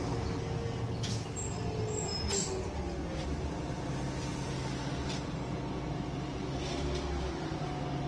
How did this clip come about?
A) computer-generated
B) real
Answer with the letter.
B